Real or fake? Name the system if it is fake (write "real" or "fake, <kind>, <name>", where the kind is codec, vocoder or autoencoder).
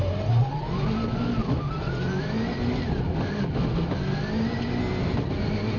real